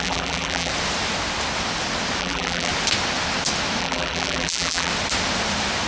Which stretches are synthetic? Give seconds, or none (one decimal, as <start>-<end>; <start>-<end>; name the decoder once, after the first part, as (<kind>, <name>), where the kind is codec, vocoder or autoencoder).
0.0-0.7 (vocoder, BigVGAN v2); 2.2-2.7; 3.8-4.9